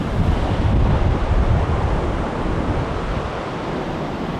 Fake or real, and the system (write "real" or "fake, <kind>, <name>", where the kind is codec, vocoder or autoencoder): fake, vocoder, BigVGAN v2